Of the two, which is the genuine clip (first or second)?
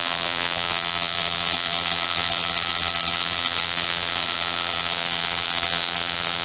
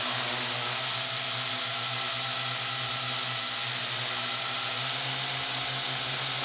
second